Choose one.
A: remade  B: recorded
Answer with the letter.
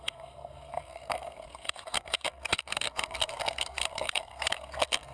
A